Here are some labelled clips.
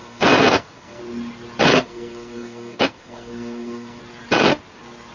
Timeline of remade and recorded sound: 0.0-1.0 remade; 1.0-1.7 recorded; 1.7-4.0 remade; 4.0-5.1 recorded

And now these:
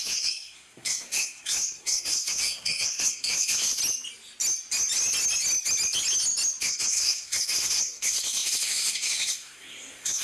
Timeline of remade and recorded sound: 0.0-3.8 remade; 3.8-6.6 recorded; 6.6-10.2 remade

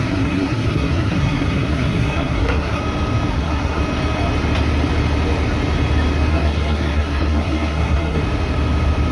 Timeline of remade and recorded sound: 0.0-2.8 remade; 2.8-3.3 recorded; 3.3-3.8 remade; 3.8-6.3 recorded; 6.3-8.2 remade; 8.2-9.1 recorded

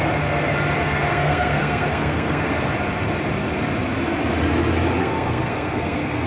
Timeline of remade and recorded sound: 0.0-1.1 recorded; 1.1-2.5 remade; 2.5-5.0 recorded; 5.0-6.3 remade

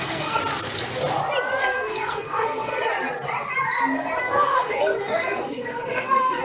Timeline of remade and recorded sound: 0.0-0.4 remade; 0.4-1.6 recorded; 1.6-2.7 remade; 2.7-4.2 recorded; 4.2-6.4 remade

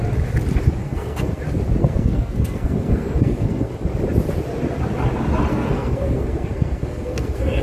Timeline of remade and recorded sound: 0.0-0.8 recorded; 0.8-1.4 remade; 1.4-1.8 recorded; 1.8-3.7 remade; 3.7-5.5 recorded; 5.5-7.6 remade

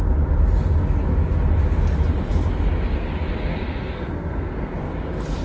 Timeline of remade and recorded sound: 0.0-3.5 recorded; 3.5-4.9 remade; 4.9-5.4 recorded